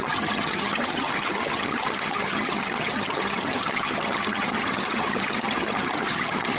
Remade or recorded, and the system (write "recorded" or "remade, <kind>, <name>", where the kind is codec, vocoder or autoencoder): remade, vocoder, HiFi-GAN